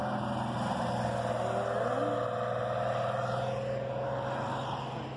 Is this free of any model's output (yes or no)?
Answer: yes